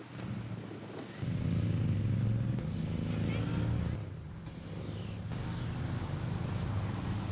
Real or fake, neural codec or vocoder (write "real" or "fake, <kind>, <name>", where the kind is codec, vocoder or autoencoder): real